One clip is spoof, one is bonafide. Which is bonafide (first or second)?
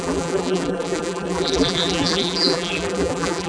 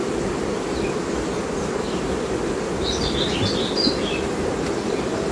second